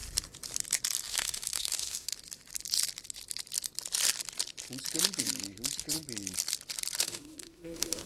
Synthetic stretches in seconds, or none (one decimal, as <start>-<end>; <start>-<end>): 1.1-2.1; 7.0-8.1